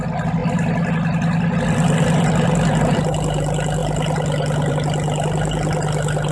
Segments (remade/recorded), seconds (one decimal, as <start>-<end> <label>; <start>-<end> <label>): 0.0-6.3 recorded